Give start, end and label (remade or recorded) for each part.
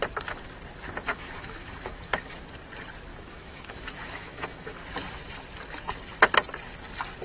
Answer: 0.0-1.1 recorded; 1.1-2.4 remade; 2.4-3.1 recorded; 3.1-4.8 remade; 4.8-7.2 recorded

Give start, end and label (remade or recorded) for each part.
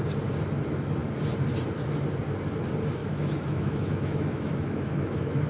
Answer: 0.0-3.0 recorded; 3.0-5.5 remade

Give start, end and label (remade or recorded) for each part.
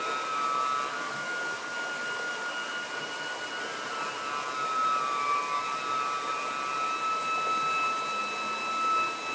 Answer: 0.0-0.9 recorded; 0.9-1.4 remade; 1.4-9.3 recorded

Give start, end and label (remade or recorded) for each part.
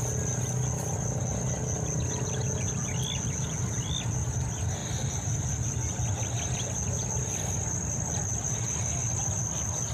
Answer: 0.0-9.9 recorded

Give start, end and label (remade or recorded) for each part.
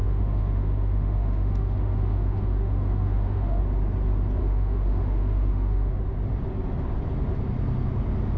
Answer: 0.0-3.6 remade; 3.6-4.4 recorded; 4.4-6.0 remade; 6.0-8.4 recorded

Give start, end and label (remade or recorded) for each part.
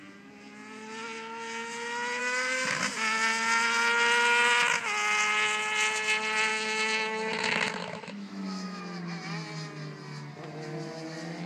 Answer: 0.0-2.2 recorded; 2.2-2.8 remade; 2.8-6.5 recorded; 6.5-7.3 remade; 7.3-7.8 recorded; 7.8-8.8 remade; 8.8-11.5 recorded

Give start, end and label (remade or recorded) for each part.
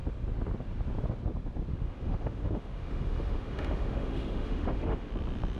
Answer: 0.0-1.7 recorded; 1.7-5.1 remade; 5.1-5.6 recorded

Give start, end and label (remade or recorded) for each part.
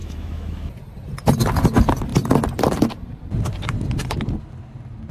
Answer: 0.0-0.7 remade; 0.7-5.1 recorded